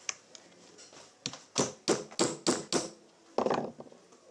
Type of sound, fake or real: real